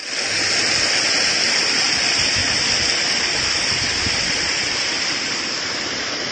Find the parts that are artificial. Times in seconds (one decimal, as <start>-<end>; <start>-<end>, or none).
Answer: 0.0-0.5; 2.4-5.2